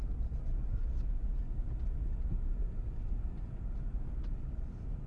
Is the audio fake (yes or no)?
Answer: no